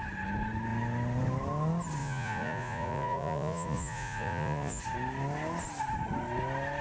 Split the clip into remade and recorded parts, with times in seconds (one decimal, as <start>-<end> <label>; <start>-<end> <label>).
0.0-2.0 recorded; 2.0-4.8 remade; 4.8-6.8 recorded